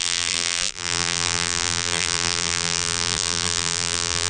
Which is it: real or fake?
fake